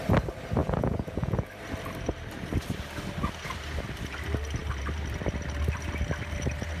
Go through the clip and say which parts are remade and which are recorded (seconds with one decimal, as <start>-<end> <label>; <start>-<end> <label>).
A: 0.0-0.6 recorded; 0.6-1.5 remade; 1.5-6.8 recorded